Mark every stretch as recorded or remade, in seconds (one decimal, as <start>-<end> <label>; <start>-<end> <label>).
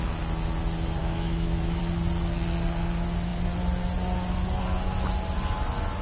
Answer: 0.0-1.0 recorded; 1.0-1.8 remade; 1.8-6.0 recorded